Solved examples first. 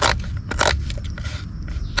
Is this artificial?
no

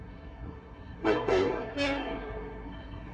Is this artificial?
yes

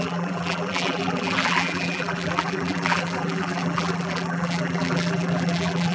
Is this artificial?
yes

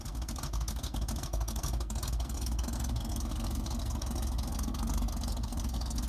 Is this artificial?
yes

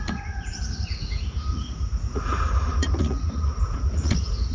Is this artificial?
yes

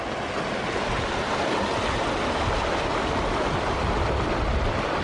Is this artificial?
no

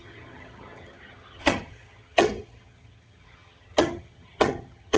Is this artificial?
yes